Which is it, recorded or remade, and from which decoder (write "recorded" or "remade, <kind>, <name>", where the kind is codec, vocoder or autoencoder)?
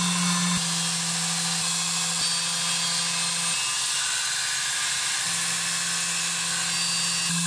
recorded